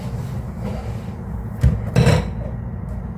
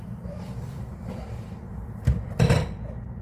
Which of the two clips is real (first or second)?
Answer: first